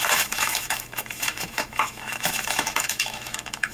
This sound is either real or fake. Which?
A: fake